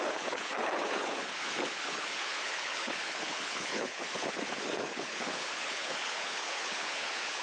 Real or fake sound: fake